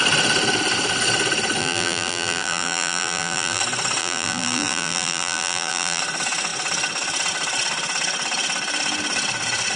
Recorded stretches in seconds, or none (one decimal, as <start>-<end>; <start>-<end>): 0.0-1.6; 3.6-4.0; 6.0-9.8